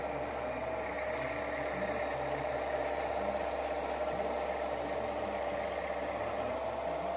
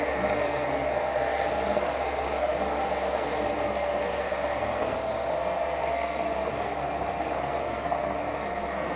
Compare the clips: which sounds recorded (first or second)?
first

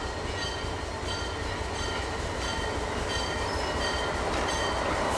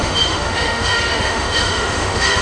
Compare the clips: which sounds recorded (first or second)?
first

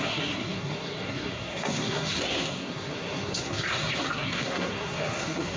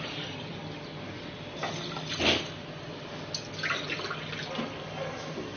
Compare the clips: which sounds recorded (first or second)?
second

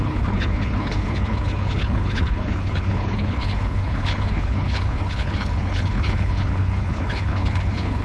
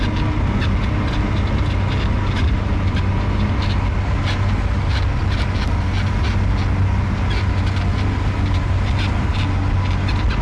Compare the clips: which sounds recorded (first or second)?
second